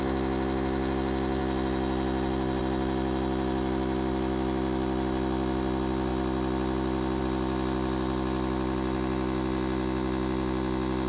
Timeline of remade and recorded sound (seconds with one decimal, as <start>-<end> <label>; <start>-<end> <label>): 0.0-11.1 recorded